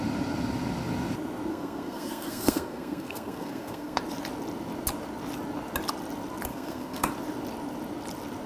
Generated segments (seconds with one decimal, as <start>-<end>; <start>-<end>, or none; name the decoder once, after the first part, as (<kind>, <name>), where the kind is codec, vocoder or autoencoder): 1.5-4.0 (codec, SNAC); 6.5-7.1